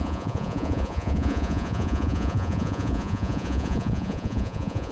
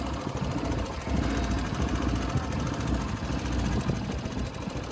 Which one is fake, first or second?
first